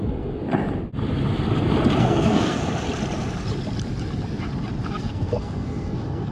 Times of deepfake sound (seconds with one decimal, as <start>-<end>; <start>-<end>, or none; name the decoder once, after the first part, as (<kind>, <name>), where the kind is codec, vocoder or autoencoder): 0.0-0.4 (codec, SNAC); 2.0-2.6; 4.9-6.3